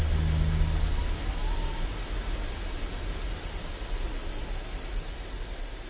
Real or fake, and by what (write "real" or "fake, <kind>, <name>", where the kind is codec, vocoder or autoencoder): real